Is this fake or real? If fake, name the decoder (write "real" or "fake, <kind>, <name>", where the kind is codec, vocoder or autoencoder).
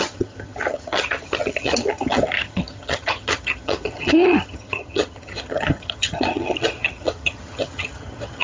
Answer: fake, vocoder, HiFi-GAN